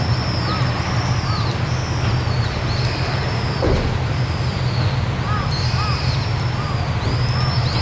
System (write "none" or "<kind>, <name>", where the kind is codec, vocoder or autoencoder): none